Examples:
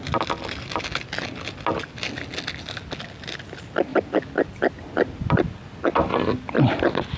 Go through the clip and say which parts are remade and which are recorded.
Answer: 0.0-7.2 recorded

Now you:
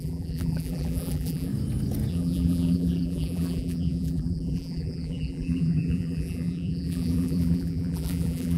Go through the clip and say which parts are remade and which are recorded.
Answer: 0.0-1.5 remade; 1.5-2.1 recorded; 2.1-8.6 remade

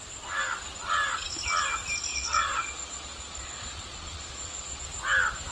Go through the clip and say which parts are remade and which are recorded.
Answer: 0.0-2.1 recorded; 2.1-4.8 remade; 4.8-5.5 recorded

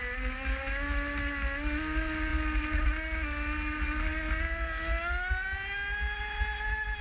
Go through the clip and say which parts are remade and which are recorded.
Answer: 0.0-7.0 recorded

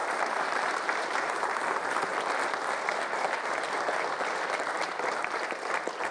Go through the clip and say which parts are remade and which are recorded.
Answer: 0.0-2.1 remade; 2.1-6.1 recorded

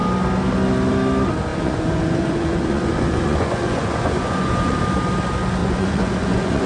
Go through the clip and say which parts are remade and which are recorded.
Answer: 0.0-1.5 recorded; 1.5-4.8 remade; 4.8-5.6 recorded; 5.6-6.7 remade

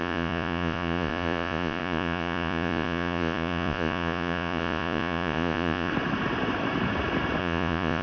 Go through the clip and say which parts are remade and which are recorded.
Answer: 0.0-5.9 remade; 5.9-7.4 recorded; 7.4-8.0 remade

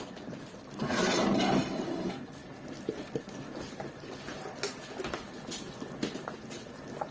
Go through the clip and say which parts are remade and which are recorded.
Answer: 0.0-7.1 recorded